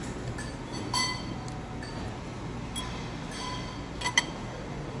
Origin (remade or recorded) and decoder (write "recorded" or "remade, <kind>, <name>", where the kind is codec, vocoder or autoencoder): recorded